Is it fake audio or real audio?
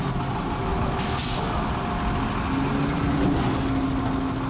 real